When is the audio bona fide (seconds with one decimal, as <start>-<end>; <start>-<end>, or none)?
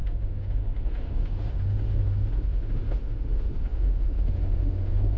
none